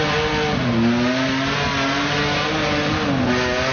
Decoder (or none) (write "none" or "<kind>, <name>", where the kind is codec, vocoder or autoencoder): none